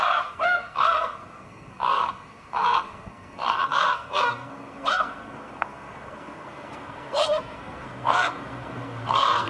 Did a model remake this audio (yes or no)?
yes